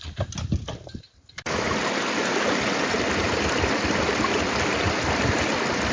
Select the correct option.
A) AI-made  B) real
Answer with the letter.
B